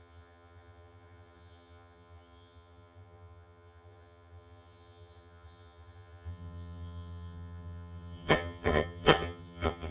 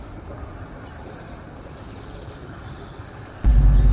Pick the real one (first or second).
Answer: second